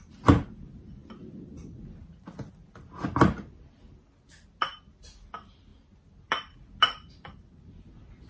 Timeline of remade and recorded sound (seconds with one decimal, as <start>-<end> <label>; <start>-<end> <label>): 0.0-8.3 recorded